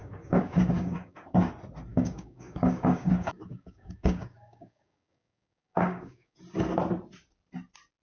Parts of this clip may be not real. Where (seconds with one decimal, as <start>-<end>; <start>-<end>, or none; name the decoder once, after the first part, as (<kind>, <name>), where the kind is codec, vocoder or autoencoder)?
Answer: 0.0-1.5 (codec, DAC); 1.9-6.4